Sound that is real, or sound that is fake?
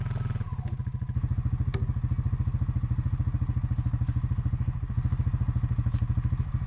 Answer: real